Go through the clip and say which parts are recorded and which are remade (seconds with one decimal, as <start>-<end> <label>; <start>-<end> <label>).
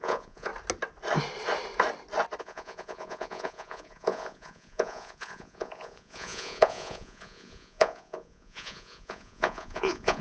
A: 0.0-0.5 remade; 0.5-2.4 recorded; 2.4-10.2 remade